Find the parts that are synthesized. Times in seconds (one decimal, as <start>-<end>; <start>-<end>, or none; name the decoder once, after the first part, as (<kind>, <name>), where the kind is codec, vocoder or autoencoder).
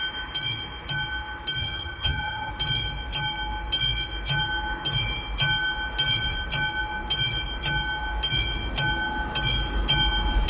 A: 1.6-2.5 (vocoder, HiFi-GAN)